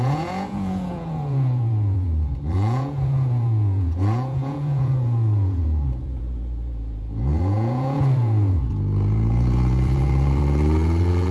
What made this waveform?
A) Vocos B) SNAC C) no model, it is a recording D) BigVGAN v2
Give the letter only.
A